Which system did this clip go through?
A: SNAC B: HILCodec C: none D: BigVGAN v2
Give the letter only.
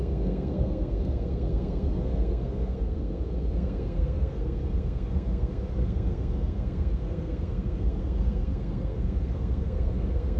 A